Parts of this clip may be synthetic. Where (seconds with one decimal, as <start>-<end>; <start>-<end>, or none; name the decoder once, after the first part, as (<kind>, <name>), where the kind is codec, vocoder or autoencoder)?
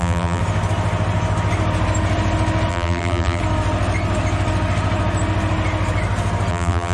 0.0-0.4 (vocoder, BigVGAN v2); 2.7-3.4; 6.5-6.9